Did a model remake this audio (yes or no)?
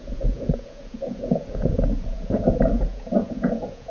yes